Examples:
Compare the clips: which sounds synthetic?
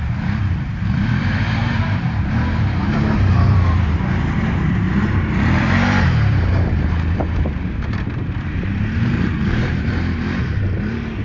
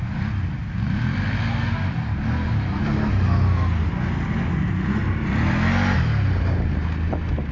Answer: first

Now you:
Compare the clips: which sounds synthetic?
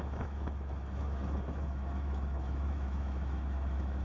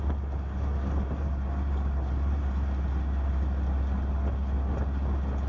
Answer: first